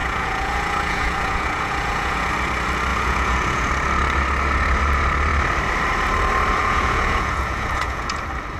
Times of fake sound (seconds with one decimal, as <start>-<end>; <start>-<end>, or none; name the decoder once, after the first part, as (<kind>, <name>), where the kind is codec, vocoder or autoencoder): 0.0-2.3 (vocoder, Vocos); 2.9-3.7; 6.6-8.2